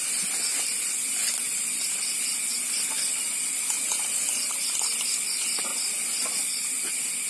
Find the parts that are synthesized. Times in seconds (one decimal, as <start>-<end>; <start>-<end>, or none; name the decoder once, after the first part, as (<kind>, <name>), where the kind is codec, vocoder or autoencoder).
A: none